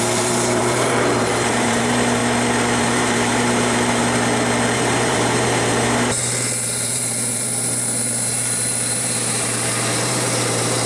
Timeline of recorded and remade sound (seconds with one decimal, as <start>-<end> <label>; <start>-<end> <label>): 0.0-2.2 remade; 2.2-2.8 recorded; 2.8-4.0 remade; 4.0-4.8 recorded; 4.8-10.9 remade